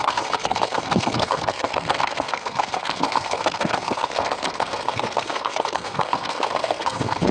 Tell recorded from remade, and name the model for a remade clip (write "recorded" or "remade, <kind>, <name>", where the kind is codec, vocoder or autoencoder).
remade, codec, SNAC